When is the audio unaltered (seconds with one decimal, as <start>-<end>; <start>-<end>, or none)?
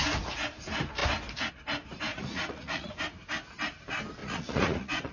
0.0-2.1; 2.9-4.2